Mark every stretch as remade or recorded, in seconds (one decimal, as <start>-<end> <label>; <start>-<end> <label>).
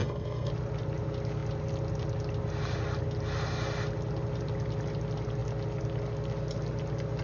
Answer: 0.0-0.5 remade; 0.5-7.2 recorded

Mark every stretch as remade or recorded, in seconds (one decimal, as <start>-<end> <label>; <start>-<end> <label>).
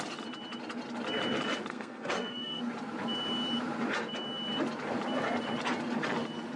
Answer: 0.0-1.7 recorded; 1.7-2.6 remade; 2.6-6.6 recorded